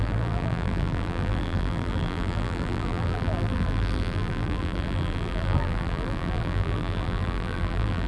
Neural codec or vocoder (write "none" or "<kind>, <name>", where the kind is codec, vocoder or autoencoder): vocoder, BigVGAN v2